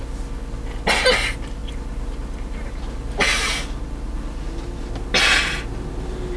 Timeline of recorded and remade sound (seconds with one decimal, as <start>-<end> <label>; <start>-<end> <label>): 0.0-6.4 recorded